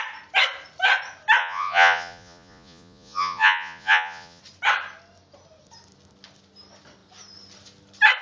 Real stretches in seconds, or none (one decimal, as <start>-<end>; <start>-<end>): 0.0-1.4; 4.4-8.2